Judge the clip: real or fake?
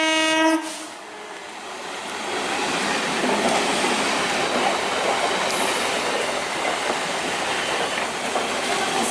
real